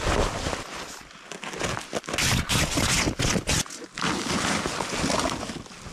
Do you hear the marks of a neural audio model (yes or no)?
no